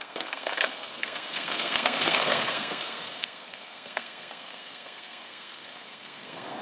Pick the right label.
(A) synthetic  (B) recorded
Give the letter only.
A